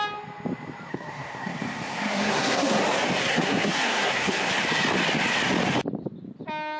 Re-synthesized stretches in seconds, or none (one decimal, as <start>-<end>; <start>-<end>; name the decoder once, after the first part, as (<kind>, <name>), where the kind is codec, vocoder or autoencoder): 0.9-2.8 (codec, SNAC); 3.2-4.5